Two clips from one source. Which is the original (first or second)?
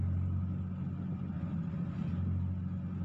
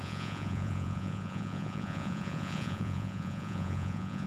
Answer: first